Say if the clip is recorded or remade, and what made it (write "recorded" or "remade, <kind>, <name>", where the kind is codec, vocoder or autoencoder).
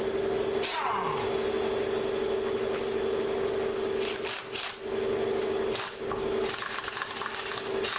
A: recorded